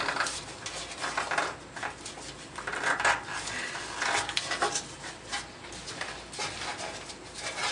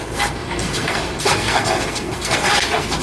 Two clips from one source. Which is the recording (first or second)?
first